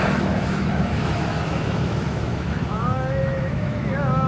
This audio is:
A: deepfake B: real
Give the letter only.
A